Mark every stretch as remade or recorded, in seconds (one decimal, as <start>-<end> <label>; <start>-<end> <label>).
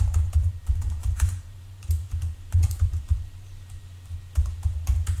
0.0-3.8 remade; 3.8-4.5 recorded; 4.5-5.2 remade